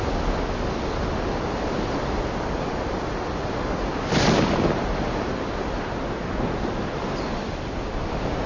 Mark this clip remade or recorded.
recorded